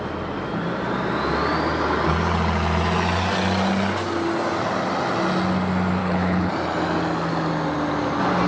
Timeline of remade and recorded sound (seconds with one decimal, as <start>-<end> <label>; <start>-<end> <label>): 0.0-6.0 recorded; 6.0-6.5 remade; 6.5-8.5 recorded